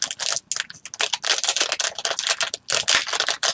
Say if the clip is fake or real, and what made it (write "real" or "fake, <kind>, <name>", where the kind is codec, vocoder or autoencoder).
real